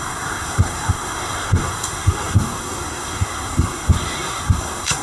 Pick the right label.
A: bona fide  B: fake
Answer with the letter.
B